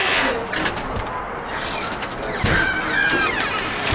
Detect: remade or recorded recorded